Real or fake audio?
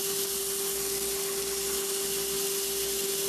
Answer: real